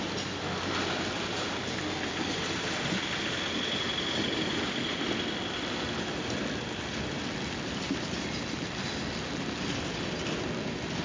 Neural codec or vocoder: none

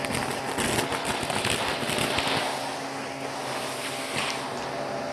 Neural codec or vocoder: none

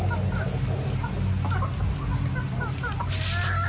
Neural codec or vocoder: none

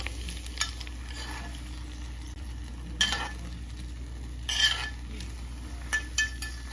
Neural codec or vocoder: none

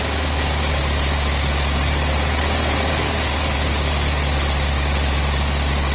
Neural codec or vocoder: none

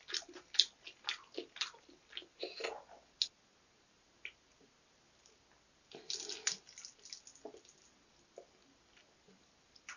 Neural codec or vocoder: none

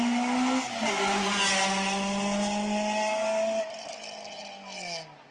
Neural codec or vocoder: none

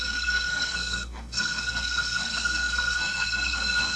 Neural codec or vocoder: codec, SNAC